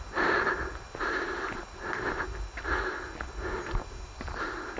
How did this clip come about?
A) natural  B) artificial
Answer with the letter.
A